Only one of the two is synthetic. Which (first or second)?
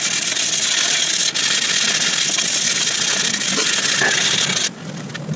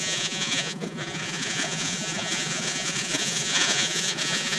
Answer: second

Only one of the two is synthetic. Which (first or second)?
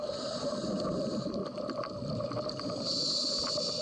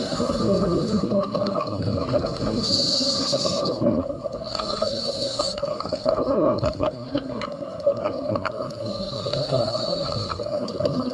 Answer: second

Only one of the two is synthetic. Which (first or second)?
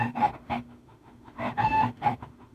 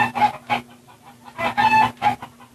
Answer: first